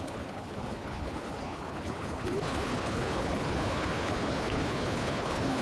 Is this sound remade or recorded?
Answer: remade